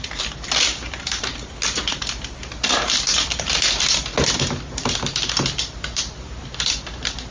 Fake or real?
real